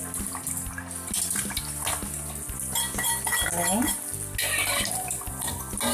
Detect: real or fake real